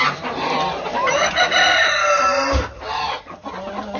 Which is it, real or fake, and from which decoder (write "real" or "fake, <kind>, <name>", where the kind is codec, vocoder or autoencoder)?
real